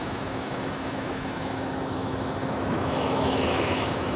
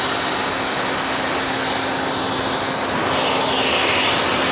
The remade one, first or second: first